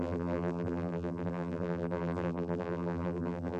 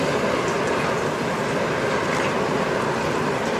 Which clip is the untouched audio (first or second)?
second